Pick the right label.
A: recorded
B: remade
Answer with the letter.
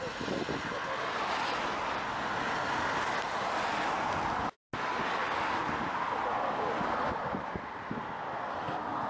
A